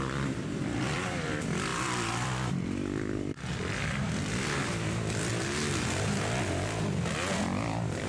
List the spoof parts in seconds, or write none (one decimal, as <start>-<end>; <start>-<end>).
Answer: 0.0-5.3; 7.4-8.1